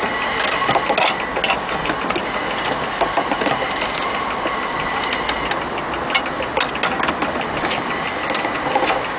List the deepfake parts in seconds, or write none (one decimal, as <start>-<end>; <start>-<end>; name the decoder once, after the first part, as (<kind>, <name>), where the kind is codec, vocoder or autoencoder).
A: none

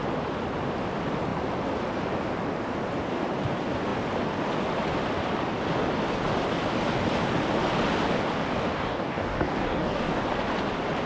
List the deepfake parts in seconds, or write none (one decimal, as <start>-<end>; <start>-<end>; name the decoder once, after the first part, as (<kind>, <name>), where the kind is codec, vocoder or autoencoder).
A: 8.7-10.2 (codec, DAC)

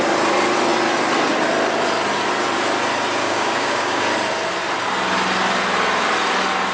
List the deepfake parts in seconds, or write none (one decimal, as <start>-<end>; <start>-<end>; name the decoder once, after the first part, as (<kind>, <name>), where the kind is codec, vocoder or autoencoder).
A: 3.2-4.0 (codec, DAC)

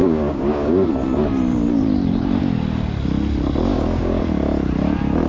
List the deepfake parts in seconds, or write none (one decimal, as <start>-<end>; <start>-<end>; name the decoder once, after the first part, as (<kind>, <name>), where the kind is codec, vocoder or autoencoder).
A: 0.0-0.9 (codec, DAC); 3.7-4.2

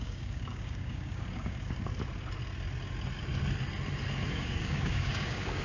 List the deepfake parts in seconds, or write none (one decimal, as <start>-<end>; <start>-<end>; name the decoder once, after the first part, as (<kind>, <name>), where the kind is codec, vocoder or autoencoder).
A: 0.0-1.9 (codec, DAC); 4.3-5.6

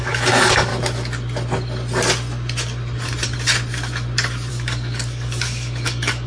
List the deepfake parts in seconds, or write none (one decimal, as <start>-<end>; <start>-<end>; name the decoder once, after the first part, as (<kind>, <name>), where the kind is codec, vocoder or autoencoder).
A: 0.0-0.7 (codec, DAC); 4.5-6.3